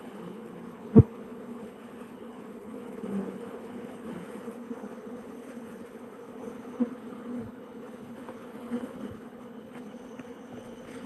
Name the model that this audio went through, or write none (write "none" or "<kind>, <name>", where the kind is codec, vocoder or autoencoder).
codec, HILCodec